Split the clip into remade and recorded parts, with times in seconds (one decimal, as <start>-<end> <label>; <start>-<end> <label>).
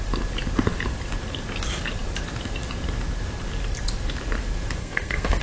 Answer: 0.0-4.8 recorded; 4.8-5.4 remade